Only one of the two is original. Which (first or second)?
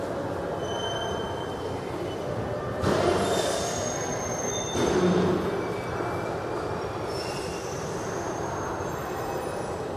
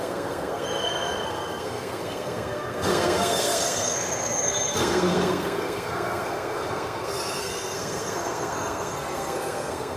first